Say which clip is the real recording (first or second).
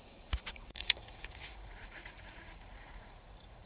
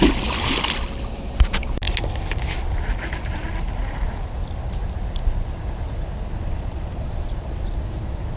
second